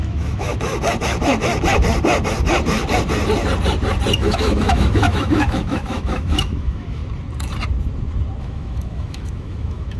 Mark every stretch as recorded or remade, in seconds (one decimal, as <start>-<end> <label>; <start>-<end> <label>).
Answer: 0.0-0.5 remade; 0.5-4.2 recorded; 4.2-7.0 remade; 7.0-8.4 recorded; 8.4-10.0 remade